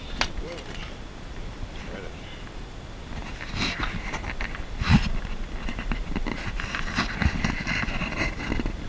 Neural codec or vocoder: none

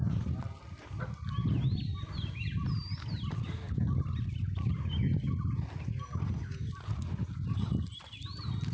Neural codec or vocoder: none